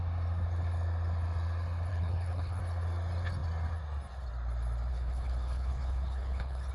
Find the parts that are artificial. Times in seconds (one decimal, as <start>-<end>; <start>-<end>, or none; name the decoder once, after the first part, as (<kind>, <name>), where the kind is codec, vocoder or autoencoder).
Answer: 1.9-2.6 (codec, HILCodec); 4.9-6.7